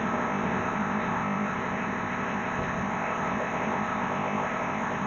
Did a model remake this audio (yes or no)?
yes